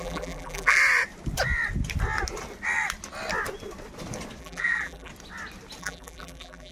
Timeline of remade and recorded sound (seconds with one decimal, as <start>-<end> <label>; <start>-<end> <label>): 0.0-0.8 remade; 0.8-4.4 recorded; 4.4-5.1 remade; 5.1-5.8 recorded; 5.8-6.7 remade